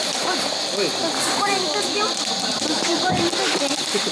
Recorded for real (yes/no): yes